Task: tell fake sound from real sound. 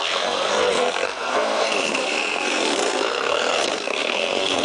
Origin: fake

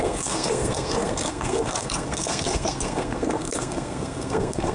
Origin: fake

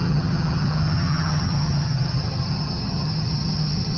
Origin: fake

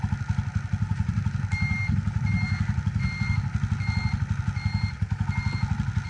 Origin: real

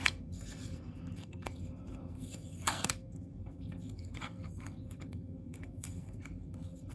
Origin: fake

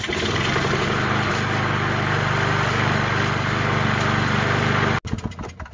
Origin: real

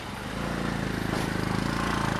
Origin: real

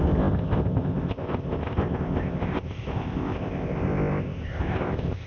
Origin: fake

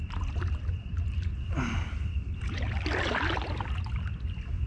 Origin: real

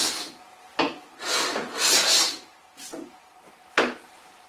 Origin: real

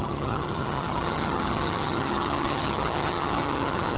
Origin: fake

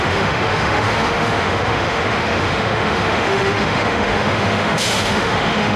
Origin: fake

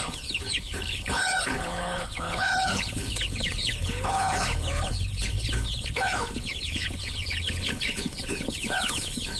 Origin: fake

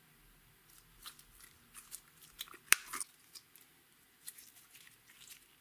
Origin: real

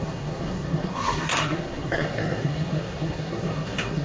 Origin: fake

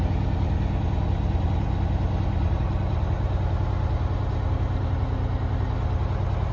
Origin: real